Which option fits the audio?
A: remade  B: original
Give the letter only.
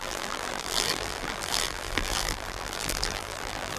A